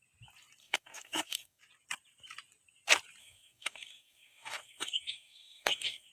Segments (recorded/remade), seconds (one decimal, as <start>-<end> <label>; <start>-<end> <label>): 0.0-0.6 recorded; 0.6-1.6 remade; 1.6-3.2 recorded; 3.2-6.1 remade